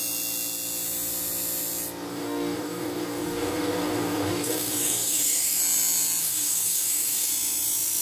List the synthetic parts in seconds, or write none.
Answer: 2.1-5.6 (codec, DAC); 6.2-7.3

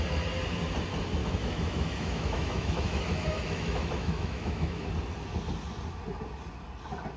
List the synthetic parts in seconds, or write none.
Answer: 1.2-4.9 (autoencoder, DAC-VAE)

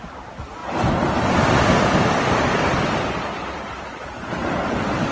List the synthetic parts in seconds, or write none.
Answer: none